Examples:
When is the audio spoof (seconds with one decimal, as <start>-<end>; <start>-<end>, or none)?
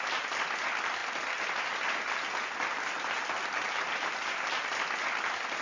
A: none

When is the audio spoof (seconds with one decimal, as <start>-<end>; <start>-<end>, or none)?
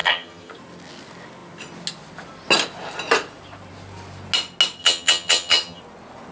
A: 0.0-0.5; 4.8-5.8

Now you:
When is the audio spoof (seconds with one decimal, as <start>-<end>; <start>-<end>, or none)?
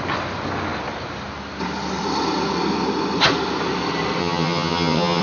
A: 4.2-5.2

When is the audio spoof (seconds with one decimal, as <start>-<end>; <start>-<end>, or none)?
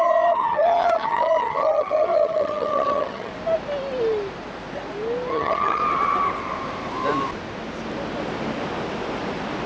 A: 0.0-3.3; 5.3-5.8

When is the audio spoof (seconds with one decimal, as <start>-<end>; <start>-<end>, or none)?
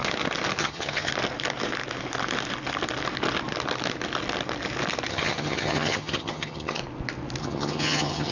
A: 0.6-1.1; 5.1-6.8; 7.4-8.3